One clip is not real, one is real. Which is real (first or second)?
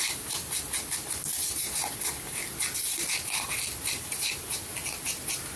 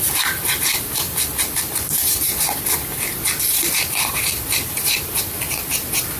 first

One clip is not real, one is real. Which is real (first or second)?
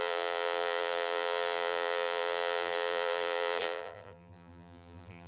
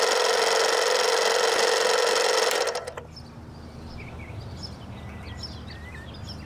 second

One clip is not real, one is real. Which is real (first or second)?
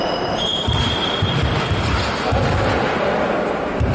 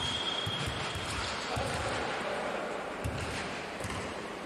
first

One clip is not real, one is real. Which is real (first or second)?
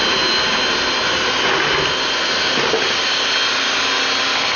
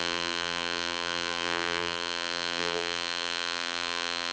first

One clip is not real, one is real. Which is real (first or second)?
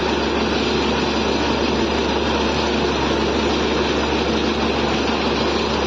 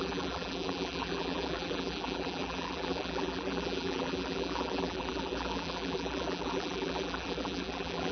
first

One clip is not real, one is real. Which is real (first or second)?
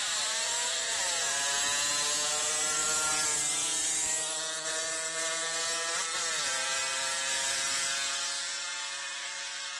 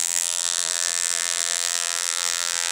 first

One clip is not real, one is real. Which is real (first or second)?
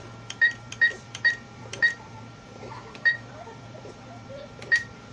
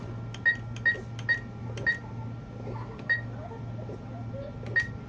second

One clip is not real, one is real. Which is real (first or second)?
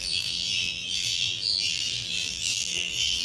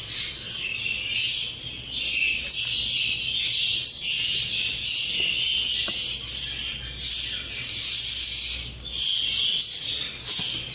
second